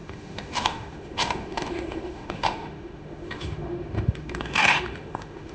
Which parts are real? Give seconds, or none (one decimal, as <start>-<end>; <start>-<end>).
none